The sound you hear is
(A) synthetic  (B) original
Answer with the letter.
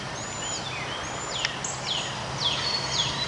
B